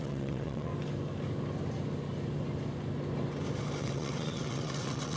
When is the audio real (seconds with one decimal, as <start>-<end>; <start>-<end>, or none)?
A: 0.7-3.8